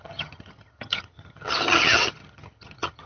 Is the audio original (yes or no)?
no